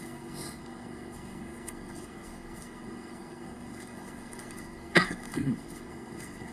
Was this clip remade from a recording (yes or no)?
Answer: yes